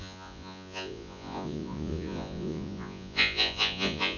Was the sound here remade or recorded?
remade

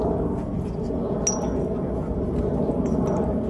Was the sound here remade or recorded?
recorded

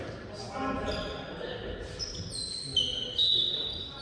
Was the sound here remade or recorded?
recorded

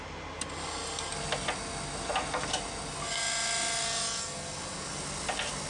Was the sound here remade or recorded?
recorded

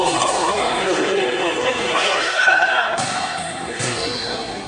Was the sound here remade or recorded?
remade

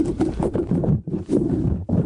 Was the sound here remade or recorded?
remade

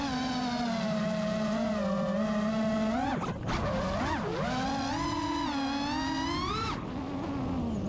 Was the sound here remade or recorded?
recorded